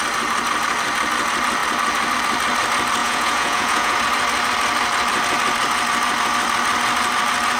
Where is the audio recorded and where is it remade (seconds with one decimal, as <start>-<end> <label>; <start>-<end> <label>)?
0.0-3.0 recorded; 3.0-4.0 remade; 4.0-7.6 recorded